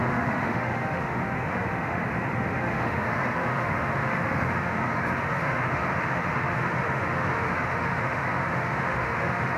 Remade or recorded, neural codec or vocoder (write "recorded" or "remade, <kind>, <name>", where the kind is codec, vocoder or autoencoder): remade, autoencoder, DAC-VAE